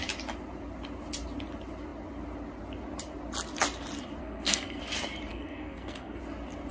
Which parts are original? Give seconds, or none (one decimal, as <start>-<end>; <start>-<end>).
0.0-4.2; 4.8-5.3; 6.2-6.7